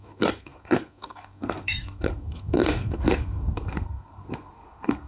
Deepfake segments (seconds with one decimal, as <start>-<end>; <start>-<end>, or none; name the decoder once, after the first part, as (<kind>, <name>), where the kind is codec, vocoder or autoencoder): 0.0-5.1 (codec, SNAC)